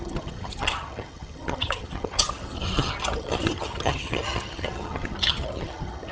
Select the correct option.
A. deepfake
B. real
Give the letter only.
A